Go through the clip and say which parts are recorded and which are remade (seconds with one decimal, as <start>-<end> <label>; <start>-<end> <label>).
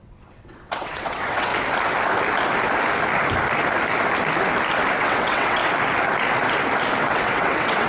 0.0-1.5 remade; 1.5-5.0 recorded; 5.0-5.6 remade; 5.6-7.0 recorded; 7.0-7.9 remade